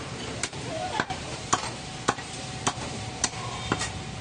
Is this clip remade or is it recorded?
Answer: remade